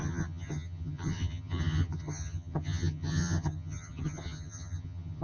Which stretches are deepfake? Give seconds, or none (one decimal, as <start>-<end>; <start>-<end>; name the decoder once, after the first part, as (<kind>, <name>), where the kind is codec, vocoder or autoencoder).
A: 0.0-5.2 (vocoder, HiFi-GAN)

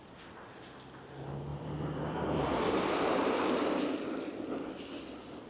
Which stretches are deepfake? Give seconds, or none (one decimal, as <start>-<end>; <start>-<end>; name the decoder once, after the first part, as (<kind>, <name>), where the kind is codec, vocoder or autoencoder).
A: 1.5-3.4 (vocoder, BigVGAN v2)

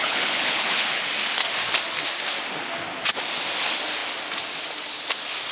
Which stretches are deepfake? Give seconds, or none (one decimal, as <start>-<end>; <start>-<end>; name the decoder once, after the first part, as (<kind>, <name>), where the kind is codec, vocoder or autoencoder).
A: 0.0-1.0 (codec, HILCodec)

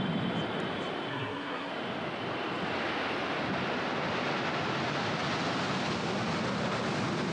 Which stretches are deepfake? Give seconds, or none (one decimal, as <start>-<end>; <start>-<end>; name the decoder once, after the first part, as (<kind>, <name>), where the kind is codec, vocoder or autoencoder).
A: 1.1-1.7 (codec, SNAC)

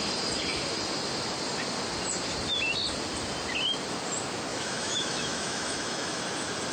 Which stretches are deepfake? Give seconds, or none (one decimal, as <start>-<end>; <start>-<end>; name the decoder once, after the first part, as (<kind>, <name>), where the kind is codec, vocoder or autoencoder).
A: 4.5-6.2 (autoencoder, DAC-VAE)

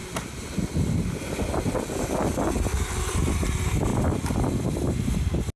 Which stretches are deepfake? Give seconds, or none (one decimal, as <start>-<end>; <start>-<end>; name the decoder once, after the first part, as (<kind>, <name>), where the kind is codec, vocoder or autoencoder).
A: none